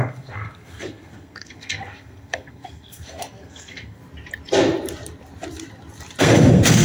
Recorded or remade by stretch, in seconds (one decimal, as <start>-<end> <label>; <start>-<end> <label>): 0.0-4.0 remade; 4.0-6.2 recorded; 6.2-6.8 remade